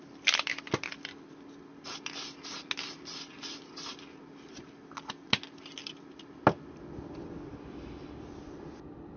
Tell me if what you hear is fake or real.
real